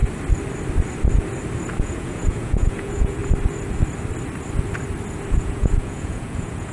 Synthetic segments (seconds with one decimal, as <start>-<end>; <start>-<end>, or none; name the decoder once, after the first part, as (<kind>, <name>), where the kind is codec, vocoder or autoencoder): 1.8-3.2 (vocoder, Vocos); 5.3-6.7

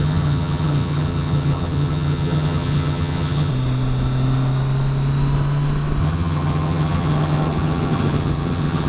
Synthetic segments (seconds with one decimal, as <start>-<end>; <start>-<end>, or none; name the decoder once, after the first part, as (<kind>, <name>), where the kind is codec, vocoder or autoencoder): 0.0-3.5 (vocoder, HiFi-GAN); 6.0-8.9

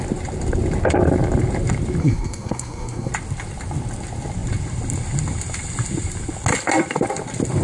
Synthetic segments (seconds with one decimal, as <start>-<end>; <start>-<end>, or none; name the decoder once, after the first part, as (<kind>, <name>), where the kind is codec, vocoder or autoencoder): 2.0-3.1 (codec, SNAC)

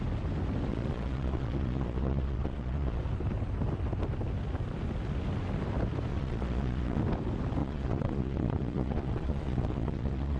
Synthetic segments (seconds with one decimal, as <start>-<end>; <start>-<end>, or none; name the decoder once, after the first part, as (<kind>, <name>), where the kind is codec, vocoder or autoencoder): 0.7-3.0 (vocoder, Vocos); 6.1-7.0; 7.6-10.4

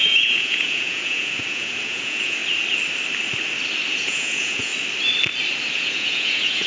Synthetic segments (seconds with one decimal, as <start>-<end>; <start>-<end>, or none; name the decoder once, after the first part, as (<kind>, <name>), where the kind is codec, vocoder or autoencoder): 0.0-2.4 (vocoder, Vocos); 3.9-4.7; 5.7-6.7

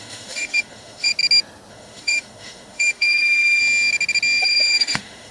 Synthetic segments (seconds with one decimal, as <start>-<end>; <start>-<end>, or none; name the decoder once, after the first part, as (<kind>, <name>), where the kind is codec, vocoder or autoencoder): 0.0-1.1 (autoencoder, DAC-VAE); 1.7-3.6; 4.4-5.3

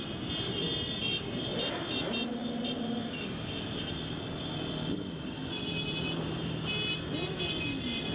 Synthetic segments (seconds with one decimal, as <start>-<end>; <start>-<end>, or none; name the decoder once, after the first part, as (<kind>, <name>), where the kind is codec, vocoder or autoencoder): none

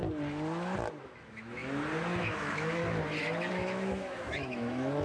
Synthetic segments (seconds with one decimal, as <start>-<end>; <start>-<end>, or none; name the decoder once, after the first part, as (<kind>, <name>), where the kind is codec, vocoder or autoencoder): 1.0-1.6 (autoencoder, DAC-VAE); 2.2-2.8; 3.5-5.0